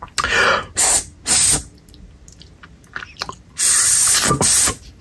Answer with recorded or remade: recorded